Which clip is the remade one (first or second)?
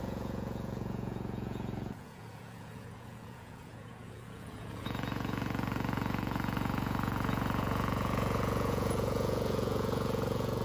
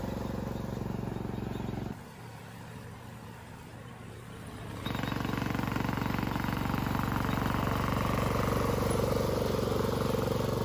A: first